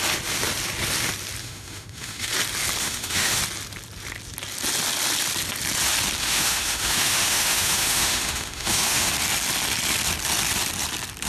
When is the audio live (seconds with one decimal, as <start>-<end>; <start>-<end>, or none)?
0.0-1.4; 2.3-2.8; 3.4-6.2; 9.1-11.3